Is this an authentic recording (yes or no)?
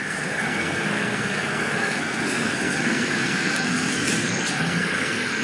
no